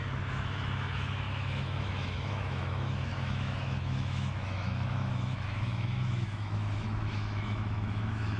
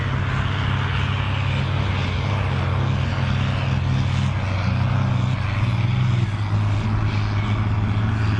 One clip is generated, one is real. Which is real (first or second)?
second